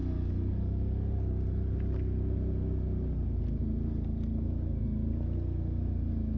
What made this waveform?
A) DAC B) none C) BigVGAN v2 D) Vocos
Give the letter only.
B